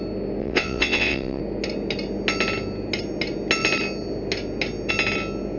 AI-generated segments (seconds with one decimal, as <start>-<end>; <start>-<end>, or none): 0.4-1.4